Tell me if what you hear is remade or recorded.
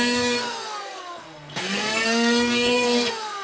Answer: remade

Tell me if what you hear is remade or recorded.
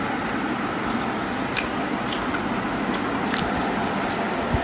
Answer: recorded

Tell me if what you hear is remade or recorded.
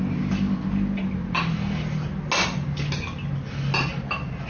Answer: recorded